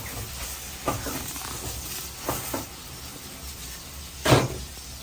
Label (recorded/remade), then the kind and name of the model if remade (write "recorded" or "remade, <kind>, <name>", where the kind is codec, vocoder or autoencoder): recorded